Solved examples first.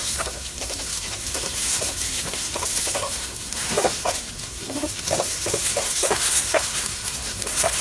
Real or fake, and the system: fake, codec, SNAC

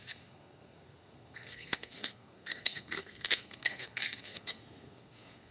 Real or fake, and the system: fake, codec, SNAC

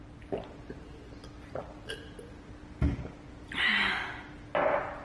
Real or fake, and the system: real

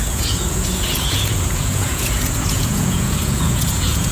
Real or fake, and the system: fake, vocoder, Vocos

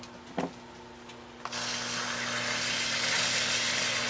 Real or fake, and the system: real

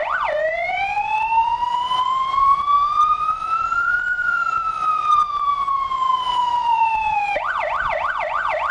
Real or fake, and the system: fake, vocoder, Vocos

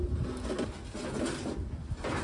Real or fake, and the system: real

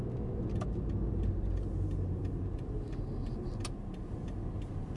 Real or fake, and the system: real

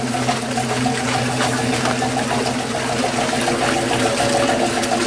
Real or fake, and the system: real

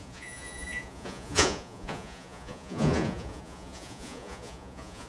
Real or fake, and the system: fake, vocoder, Vocos